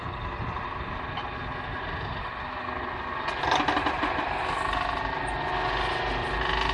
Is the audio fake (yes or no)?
no